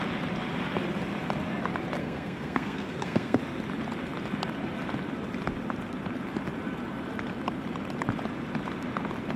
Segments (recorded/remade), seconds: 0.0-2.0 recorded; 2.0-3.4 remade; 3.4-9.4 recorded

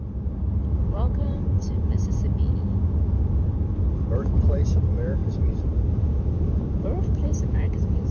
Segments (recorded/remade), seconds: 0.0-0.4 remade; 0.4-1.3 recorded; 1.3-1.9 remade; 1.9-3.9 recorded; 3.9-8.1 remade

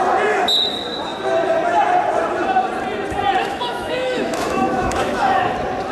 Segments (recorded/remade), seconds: 0.0-3.4 recorded; 3.4-5.4 remade; 5.4-5.9 recorded

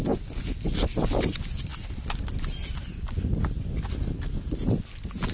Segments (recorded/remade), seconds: 0.0-5.3 recorded